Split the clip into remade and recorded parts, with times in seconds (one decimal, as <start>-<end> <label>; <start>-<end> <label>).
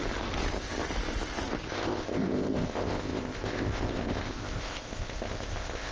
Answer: 0.0-1.7 recorded; 1.7-5.9 remade